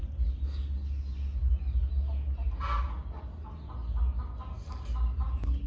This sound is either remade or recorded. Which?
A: recorded